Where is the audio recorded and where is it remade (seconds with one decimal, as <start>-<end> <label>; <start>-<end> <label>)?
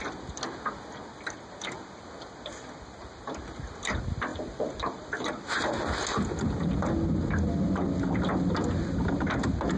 0.0-4.3 recorded; 4.3-5.3 remade; 5.3-9.8 recorded